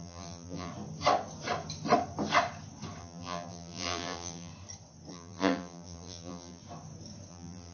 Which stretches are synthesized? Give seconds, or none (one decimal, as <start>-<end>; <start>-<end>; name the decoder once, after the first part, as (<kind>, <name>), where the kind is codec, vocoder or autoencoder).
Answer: 0.0-0.7 (vocoder, BigVGAN v2); 3.0-4.5; 5.1-6.6; 7.3-7.7